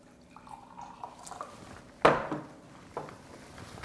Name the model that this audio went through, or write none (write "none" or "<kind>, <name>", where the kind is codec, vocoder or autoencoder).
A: none